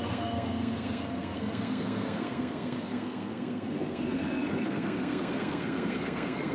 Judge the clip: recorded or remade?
remade